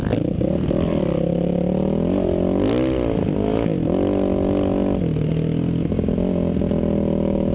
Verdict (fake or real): real